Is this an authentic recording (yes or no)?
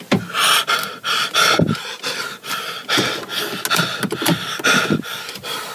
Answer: yes